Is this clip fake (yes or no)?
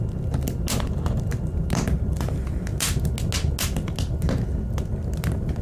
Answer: no